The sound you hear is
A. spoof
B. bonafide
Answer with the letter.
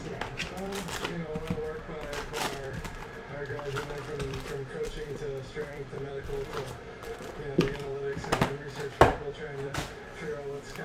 A